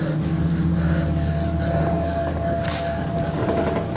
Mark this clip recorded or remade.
remade